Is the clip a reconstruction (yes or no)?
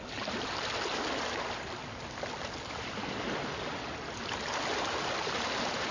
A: no